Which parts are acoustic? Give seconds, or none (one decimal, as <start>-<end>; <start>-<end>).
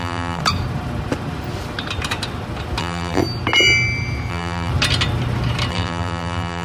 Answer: 0.4-2.8; 3.2-4.3; 4.7-5.7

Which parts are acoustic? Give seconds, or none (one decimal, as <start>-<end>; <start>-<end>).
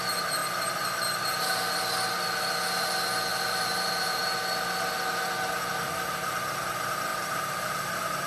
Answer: 0.0-3.3; 4.2-7.1; 7.8-8.3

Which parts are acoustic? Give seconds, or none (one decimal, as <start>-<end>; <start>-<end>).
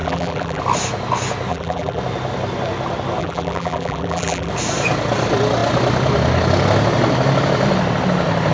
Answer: 0.6-1.5; 2.0-3.2; 4.5-8.5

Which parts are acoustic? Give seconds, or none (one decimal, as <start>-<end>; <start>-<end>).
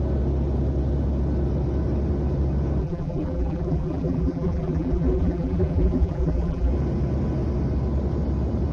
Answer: 0.0-2.8; 6.7-8.7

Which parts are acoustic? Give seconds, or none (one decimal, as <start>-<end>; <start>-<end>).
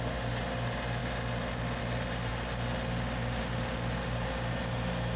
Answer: 0.0-5.2